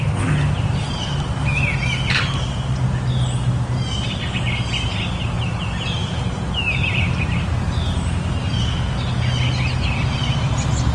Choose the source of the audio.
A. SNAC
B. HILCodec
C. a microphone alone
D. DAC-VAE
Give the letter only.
C